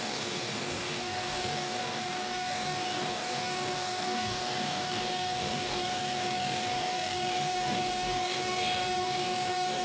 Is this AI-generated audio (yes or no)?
yes